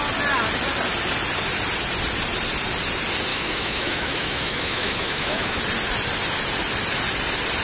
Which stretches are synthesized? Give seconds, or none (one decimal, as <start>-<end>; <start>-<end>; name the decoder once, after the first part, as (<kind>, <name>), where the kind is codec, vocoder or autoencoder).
3.3-5.6 (autoencoder, DAC-VAE)